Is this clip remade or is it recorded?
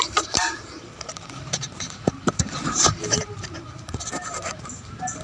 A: remade